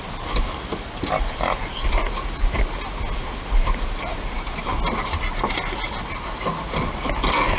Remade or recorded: recorded